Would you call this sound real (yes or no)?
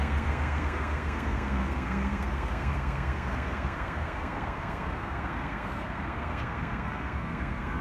no